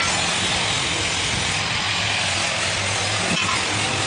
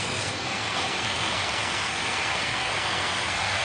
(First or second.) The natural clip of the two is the first